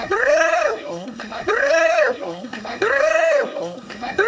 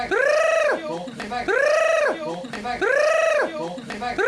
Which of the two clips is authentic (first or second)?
second